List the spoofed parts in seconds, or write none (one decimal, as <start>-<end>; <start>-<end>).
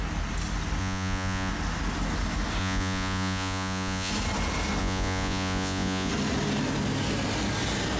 0.8-1.5; 2.6-4.1; 4.8-6.1